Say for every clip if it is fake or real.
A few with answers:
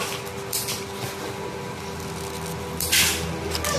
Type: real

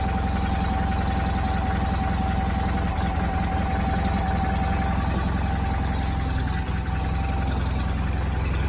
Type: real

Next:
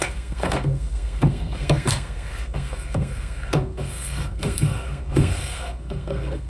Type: fake